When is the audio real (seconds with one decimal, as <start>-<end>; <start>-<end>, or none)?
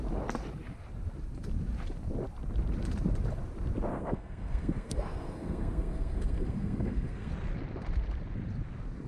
0.0-3.9; 7.3-9.1